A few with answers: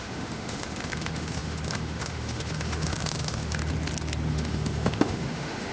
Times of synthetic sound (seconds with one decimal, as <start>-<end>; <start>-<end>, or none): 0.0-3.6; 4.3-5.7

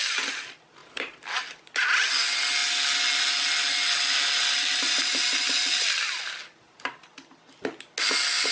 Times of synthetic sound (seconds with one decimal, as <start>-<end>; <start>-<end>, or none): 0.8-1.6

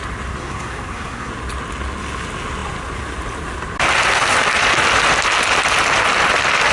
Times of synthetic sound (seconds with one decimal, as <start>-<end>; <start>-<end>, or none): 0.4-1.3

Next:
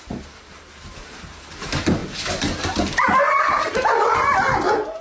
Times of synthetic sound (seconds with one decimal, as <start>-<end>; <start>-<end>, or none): 0.0-2.0

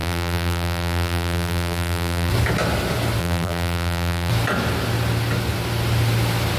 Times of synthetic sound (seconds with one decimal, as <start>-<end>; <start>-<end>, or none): 0.0-2.3; 3.2-4.3

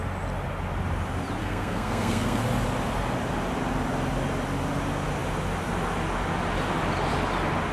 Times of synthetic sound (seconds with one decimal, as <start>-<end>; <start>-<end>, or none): 1.4-2.4

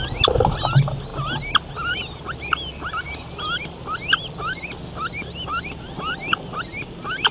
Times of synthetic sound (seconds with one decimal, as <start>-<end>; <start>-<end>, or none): none